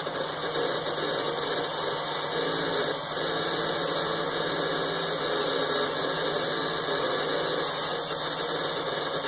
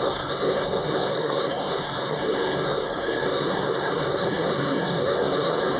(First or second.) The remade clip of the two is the second